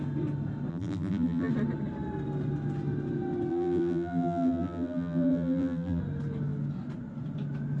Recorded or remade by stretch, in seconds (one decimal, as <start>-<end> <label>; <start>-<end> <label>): 0.0-0.7 recorded; 0.7-1.5 remade; 1.5-3.5 recorded; 3.5-6.0 remade; 6.0-7.8 recorded